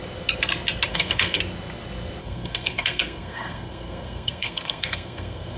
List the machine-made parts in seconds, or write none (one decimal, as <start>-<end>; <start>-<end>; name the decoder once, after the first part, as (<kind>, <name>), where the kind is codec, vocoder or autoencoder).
0.9-1.4 (codec, SNAC); 2.2-5.6